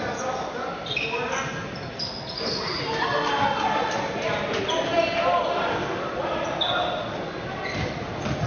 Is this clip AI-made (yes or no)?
no